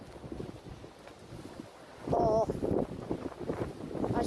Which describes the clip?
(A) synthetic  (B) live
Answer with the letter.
B